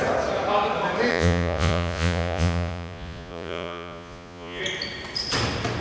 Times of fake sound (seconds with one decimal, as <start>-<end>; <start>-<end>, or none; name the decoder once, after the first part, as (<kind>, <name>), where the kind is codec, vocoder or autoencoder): 1.1-4.6 (vocoder, Vocos)